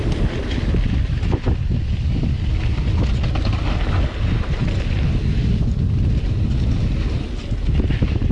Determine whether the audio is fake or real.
real